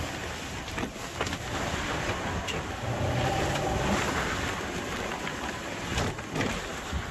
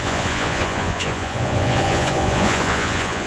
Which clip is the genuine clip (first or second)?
first